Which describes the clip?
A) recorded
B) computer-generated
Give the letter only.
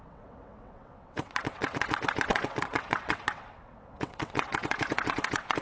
B